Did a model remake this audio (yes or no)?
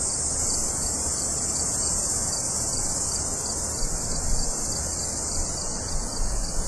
no